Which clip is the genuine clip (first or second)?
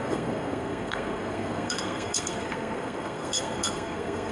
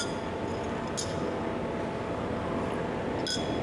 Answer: second